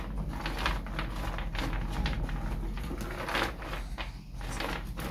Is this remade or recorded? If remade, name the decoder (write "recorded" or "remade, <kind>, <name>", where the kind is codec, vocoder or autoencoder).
recorded